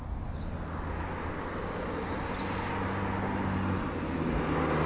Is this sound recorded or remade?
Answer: recorded